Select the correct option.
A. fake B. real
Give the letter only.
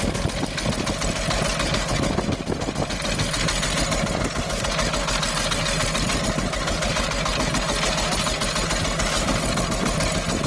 B